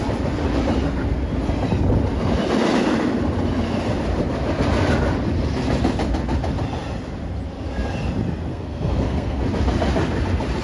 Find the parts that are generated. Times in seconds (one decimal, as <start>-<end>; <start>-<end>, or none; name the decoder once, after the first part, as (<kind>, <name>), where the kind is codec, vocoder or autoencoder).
8.5-9.4 (codec, SNAC)